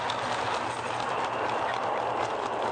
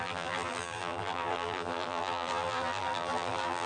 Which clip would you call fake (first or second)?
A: second